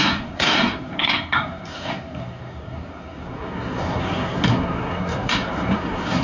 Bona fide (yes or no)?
no